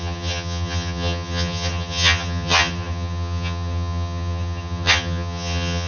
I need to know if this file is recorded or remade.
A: remade